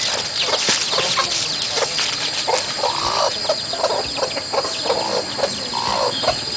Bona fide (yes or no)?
yes